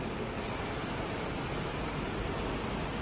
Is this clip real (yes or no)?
yes